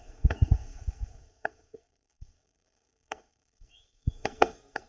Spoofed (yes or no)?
yes